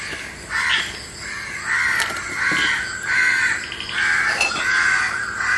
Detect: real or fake real